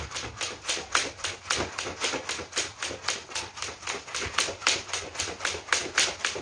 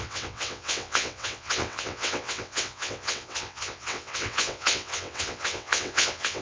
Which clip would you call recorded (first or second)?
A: first